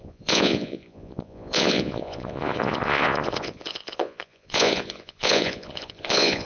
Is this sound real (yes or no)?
no